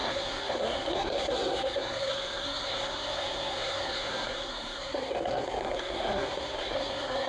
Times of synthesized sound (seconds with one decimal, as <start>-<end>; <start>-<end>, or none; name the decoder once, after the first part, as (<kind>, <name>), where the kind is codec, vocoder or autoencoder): 0.0-7.3 (codec, SNAC)